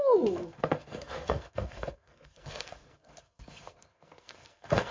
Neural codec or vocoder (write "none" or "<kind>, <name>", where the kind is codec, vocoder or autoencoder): codec, SNAC